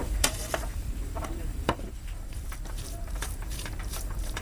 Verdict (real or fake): fake